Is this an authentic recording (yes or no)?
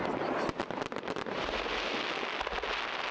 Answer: yes